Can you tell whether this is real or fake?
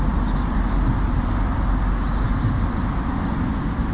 real